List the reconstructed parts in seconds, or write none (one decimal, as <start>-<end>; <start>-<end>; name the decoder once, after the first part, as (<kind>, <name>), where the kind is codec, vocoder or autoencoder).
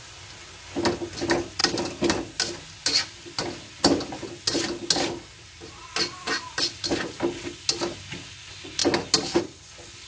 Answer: none